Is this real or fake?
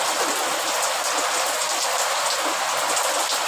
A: real